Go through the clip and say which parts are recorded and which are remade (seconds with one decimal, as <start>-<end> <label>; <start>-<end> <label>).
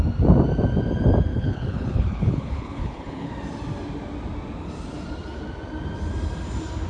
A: 0.0-1.3 recorded; 1.3-3.3 remade; 3.3-6.9 recorded